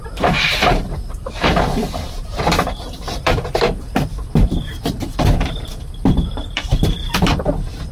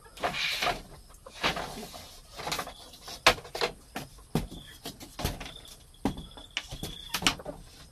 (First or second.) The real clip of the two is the second